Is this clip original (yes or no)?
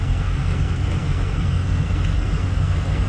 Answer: no